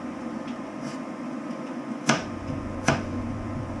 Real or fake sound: fake